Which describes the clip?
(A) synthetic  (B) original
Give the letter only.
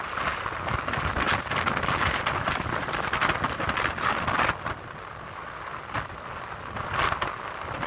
B